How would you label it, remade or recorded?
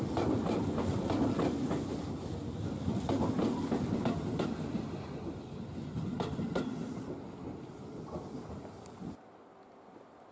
recorded